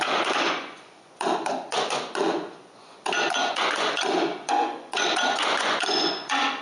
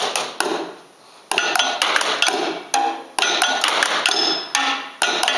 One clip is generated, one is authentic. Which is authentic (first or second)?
second